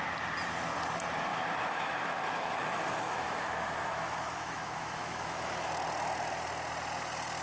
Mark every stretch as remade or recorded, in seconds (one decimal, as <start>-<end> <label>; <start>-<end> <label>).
0.0-1.3 recorded; 1.3-5.7 remade; 5.7-7.4 recorded